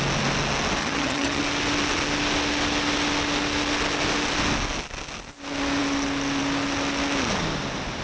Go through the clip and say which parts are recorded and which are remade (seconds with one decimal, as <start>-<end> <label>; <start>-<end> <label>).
0.0-0.8 recorded; 0.8-1.4 remade; 1.4-8.0 recorded